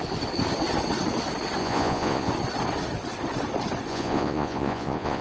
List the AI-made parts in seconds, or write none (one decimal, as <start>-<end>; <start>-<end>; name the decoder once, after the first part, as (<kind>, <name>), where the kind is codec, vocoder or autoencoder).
1.6-2.3 (vocoder, Vocos); 3.9-5.2